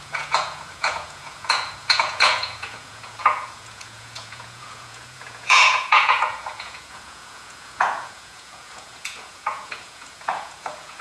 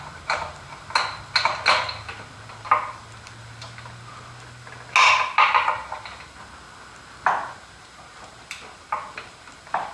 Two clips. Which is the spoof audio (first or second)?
first